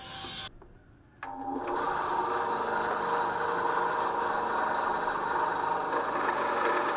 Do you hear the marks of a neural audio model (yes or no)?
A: no